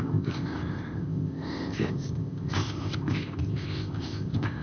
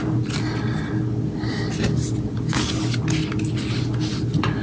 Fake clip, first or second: first